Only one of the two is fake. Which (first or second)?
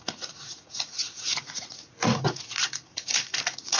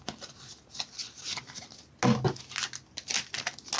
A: first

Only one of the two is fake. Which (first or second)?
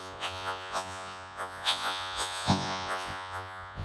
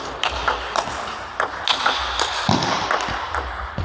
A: first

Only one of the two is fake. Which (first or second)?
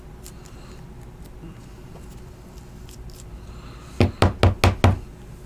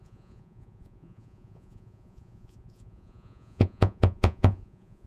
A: second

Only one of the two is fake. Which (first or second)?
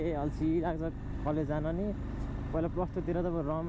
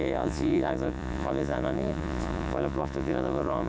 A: second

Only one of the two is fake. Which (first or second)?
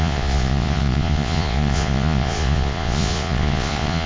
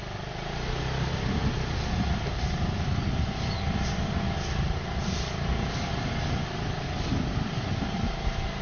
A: first